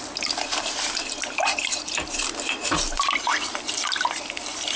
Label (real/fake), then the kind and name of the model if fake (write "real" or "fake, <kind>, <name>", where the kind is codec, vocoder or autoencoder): real